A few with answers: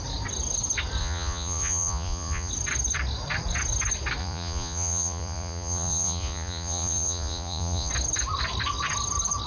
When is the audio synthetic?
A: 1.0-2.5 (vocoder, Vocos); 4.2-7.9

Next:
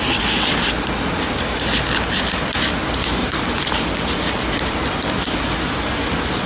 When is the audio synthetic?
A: 3.2-5.1 (vocoder, BigVGAN v2)

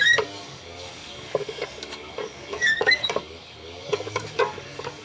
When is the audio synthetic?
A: 0.0-5.0 (codec, DAC)

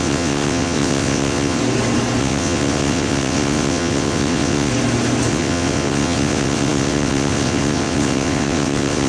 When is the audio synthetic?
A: 0.0-1.6 (vocoder, WaveNeXt); 2.2-4.7; 5.3-9.1

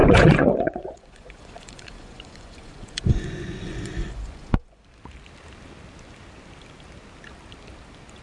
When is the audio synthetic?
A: 0.0-4.8 (vocoder, Vocos)